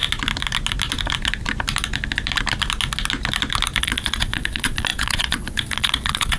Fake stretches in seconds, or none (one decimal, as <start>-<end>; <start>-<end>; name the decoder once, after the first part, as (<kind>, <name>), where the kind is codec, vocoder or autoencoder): 3.8-6.4 (vocoder, Vocos)